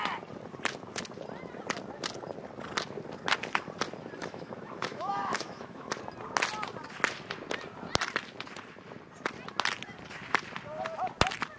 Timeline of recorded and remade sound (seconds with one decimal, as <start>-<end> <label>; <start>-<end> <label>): 0.0-4.2 recorded; 4.2-5.9 remade; 5.9-11.6 recorded